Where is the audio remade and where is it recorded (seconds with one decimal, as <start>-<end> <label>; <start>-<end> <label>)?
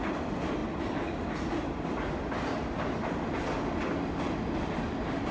0.0-5.3 recorded